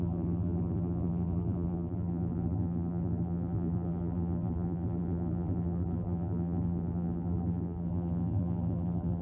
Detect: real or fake fake